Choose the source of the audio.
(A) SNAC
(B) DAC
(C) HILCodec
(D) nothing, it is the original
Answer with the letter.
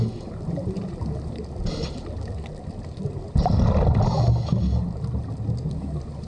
D